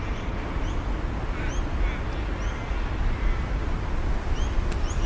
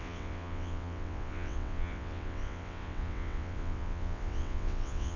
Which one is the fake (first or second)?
second